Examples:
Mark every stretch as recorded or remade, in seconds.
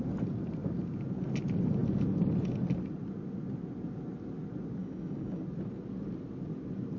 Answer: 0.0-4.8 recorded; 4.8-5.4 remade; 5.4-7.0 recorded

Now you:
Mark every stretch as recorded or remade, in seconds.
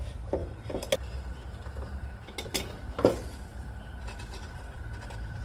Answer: 0.0-0.4 recorded; 0.4-2.6 remade; 2.6-3.5 recorded; 3.5-5.4 remade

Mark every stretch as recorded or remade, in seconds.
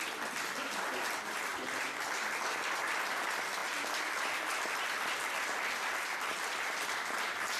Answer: 0.0-7.6 recorded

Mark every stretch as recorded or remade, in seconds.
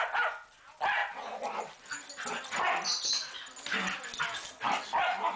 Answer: 0.0-5.4 recorded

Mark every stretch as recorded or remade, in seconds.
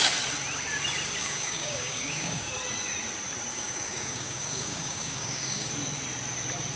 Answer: 0.0-1.2 recorded; 1.2-2.5 remade; 2.5-3.5 recorded; 3.5-5.7 remade; 5.7-6.8 recorded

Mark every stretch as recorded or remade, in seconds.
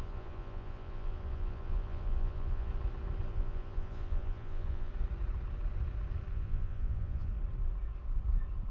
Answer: 0.0-2.7 remade; 2.7-3.3 recorded; 3.3-4.9 remade; 4.9-6.3 recorded; 6.3-7.3 remade; 7.3-8.7 recorded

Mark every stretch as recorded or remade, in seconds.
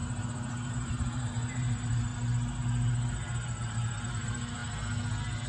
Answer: 0.0-2.1 remade; 2.1-4.1 recorded; 4.1-4.6 remade; 4.6-5.5 recorded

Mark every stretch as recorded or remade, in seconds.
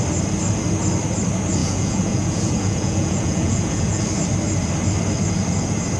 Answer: 0.0-1.6 recorded; 1.6-4.0 remade; 4.0-6.0 recorded